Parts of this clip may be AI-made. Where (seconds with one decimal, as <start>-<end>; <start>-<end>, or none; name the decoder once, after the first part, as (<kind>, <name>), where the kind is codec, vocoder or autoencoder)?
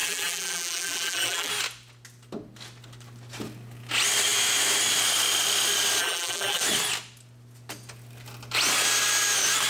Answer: 0.0-1.5 (vocoder, BigVGAN v2); 6.0-6.6